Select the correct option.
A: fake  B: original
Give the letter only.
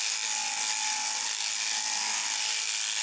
B